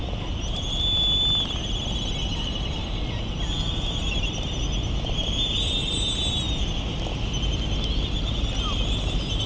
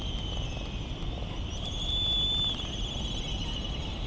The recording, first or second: first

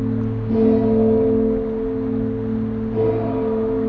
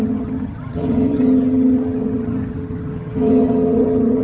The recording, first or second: first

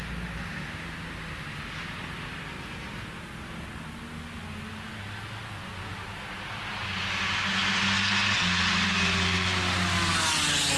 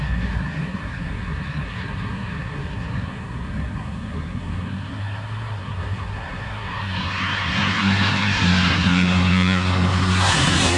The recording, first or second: first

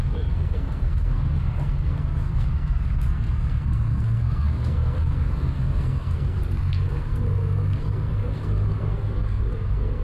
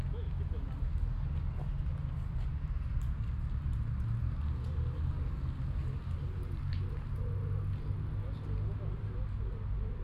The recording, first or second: second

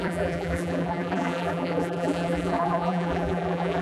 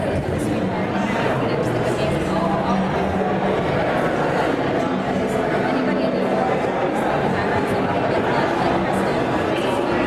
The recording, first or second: second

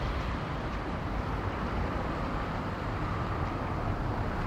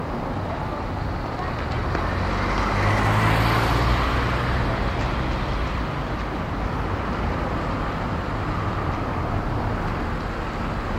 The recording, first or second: second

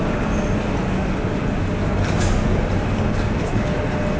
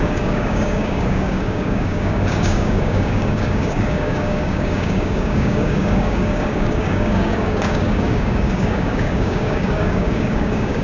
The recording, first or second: first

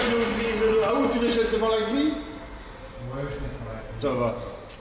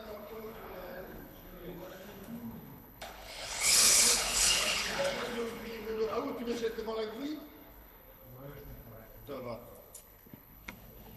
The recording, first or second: first